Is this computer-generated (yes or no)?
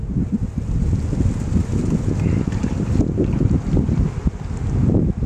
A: no